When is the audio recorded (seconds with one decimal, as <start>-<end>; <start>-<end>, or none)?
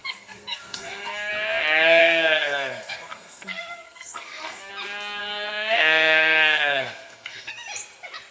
1.3-2.0; 4.7-5.2; 7.5-8.3